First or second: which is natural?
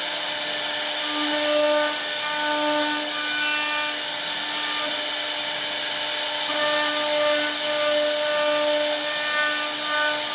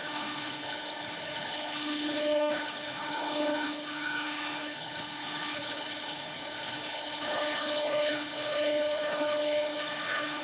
first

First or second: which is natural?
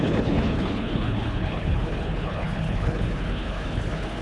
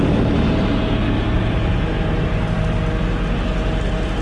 second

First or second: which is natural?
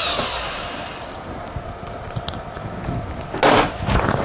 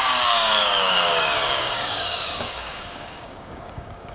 first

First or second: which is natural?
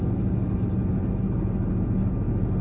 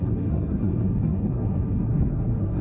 first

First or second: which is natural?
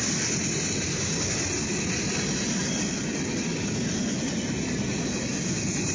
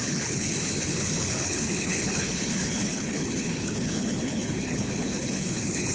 first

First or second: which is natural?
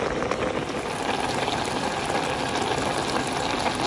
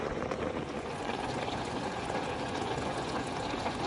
first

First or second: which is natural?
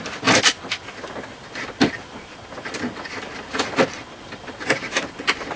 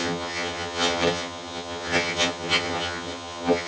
first